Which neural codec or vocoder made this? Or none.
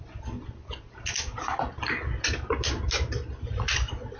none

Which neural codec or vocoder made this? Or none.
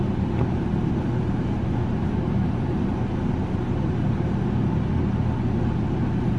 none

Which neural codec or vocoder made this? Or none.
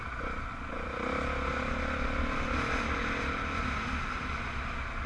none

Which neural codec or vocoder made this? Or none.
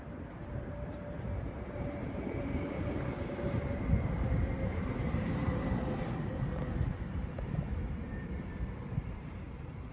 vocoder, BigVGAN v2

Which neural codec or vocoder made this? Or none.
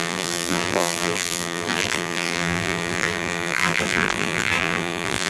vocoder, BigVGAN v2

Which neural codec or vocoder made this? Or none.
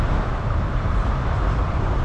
vocoder, BigVGAN v2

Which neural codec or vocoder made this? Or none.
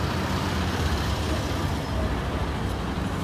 vocoder, BigVGAN v2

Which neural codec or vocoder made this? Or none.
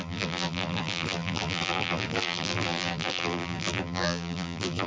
vocoder, BigVGAN v2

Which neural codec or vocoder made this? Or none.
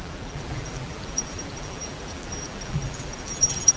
vocoder, BigVGAN v2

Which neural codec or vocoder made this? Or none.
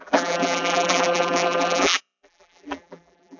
vocoder, BigVGAN v2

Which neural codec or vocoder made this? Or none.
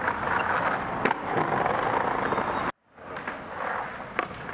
none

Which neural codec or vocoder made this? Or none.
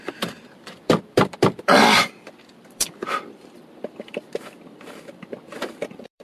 vocoder, BigVGAN v2